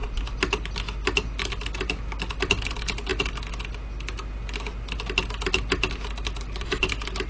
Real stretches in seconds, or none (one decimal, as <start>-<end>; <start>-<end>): 0.0-7.3